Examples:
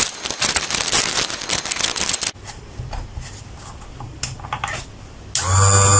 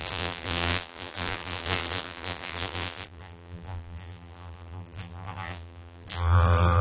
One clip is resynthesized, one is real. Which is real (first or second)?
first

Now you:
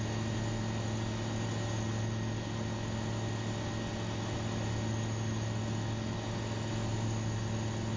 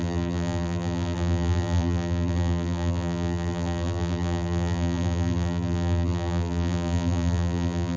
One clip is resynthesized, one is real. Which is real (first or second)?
first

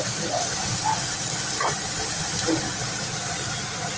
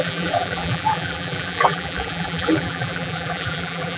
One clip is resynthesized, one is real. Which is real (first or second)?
first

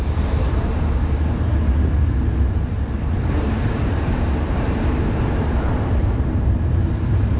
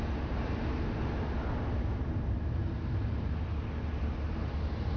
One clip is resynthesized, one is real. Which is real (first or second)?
second